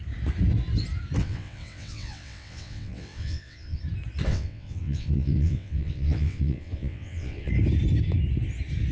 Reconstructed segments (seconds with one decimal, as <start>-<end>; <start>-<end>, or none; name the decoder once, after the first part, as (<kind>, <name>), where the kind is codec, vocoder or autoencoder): 1.2-3.8 (vocoder, WaveNeXt); 4.3-7.5